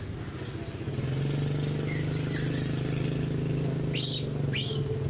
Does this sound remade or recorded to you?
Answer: recorded